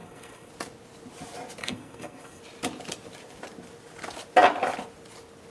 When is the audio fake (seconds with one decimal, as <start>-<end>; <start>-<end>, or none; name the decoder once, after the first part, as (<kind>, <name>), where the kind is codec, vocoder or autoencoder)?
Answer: 0.0-0.5 (codec, SNAC); 1.6-2.4